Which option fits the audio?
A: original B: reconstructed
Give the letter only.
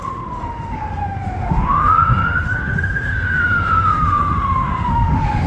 B